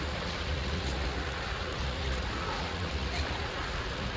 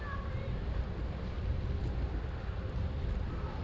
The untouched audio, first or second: second